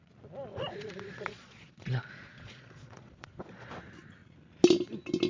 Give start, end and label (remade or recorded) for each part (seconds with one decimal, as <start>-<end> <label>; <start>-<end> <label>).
0.0-0.5 recorded; 0.5-3.7 remade; 3.7-5.3 recorded